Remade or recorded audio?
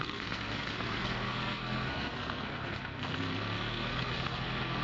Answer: remade